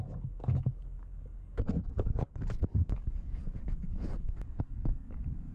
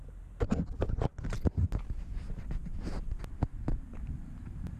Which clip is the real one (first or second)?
second